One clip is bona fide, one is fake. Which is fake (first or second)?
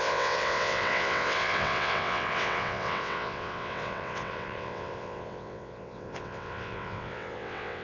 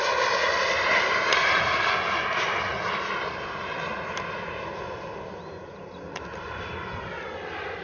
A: first